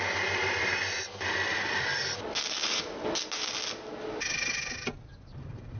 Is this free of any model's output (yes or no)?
yes